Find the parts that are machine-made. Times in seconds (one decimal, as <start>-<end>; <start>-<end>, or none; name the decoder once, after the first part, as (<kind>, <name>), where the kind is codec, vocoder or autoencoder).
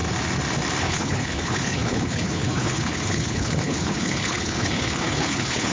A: 0.8-5.7 (codec, HILCodec)